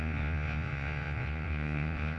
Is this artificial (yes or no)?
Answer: yes